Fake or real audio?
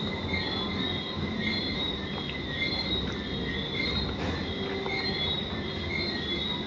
real